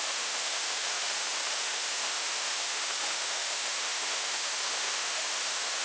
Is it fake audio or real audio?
fake